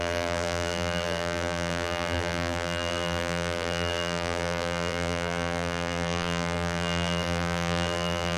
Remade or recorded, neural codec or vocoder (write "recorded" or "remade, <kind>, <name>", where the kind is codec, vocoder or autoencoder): remade, vocoder, BigVGAN v2